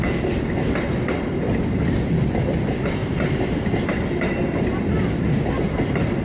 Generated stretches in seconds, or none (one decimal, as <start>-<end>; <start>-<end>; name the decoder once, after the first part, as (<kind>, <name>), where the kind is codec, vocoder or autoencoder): none